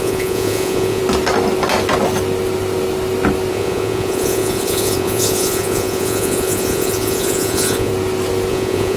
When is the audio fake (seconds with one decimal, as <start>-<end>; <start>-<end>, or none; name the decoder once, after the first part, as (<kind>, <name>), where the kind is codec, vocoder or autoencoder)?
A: 0.0-1.0 (vocoder, Vocos); 3.5-7.9; 8.5-9.0

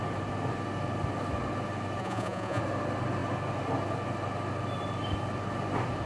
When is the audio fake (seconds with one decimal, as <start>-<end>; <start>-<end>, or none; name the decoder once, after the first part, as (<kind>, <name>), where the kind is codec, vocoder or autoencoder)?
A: 2.0-2.6 (vocoder, Vocos)

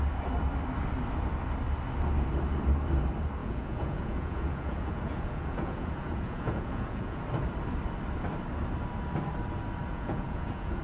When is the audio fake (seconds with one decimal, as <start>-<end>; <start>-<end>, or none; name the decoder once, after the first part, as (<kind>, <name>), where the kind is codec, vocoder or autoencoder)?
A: 3.4-7.2 (vocoder, Vocos); 9.9-10.8

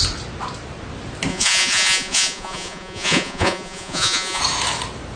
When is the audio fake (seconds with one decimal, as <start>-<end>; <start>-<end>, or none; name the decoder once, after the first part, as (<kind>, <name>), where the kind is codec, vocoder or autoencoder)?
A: 1.3-4.4 (vocoder, Vocos)

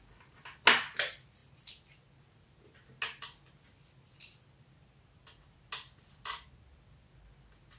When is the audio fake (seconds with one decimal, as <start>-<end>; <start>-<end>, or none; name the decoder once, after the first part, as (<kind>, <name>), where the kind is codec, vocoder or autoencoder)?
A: none

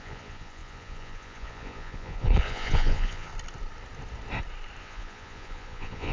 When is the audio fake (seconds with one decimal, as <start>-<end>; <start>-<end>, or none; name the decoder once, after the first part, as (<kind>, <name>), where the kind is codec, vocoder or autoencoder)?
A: 0.0-3.3 (vocoder, Vocos); 4.8-6.1